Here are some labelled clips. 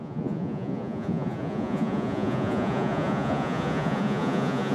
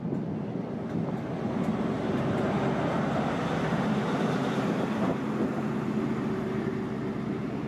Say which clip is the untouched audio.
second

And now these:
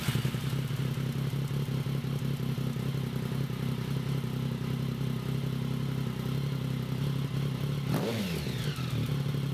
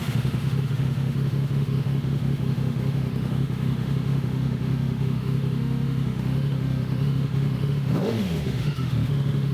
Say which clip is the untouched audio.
first